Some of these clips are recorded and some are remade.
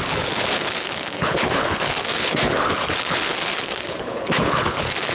remade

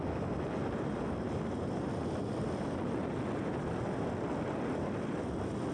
recorded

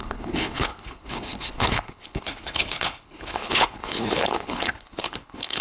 remade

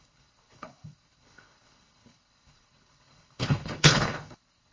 remade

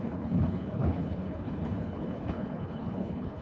remade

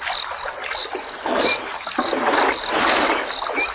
recorded